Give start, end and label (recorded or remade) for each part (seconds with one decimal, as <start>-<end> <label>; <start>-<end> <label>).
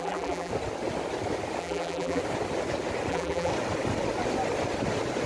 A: 0.0-0.5 remade; 0.5-1.6 recorded; 1.6-2.2 remade; 2.2-3.1 recorded; 3.1-3.5 remade; 3.5-5.3 recorded